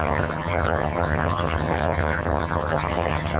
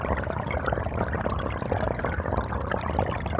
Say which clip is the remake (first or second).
first